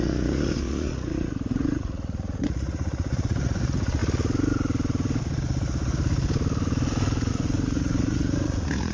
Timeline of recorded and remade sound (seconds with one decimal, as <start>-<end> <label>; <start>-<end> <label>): 0.0-4.0 remade; 4.0-7.3 recorded; 7.3-8.9 remade